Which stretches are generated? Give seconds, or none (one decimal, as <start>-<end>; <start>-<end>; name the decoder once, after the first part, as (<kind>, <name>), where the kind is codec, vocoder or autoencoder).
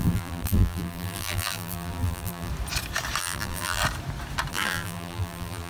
0.0-2.5 (vocoder, BigVGAN v2); 3.2-3.8; 4.5-5.7